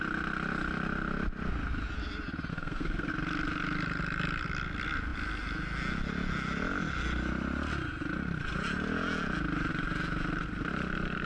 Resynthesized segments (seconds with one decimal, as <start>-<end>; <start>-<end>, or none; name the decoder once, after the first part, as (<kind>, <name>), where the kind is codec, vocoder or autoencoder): 2.5-3.1 (codec, SNAC)